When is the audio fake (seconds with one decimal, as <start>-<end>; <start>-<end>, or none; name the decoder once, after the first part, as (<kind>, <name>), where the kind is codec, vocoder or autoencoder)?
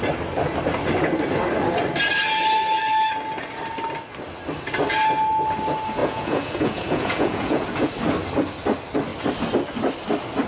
6.0-7.9 (vocoder, Vocos)